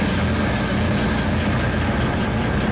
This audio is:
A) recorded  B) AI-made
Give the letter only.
A